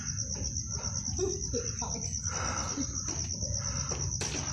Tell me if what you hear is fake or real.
real